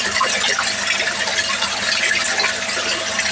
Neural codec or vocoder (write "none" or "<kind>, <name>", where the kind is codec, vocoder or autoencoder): none